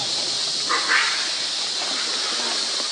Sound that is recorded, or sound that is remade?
recorded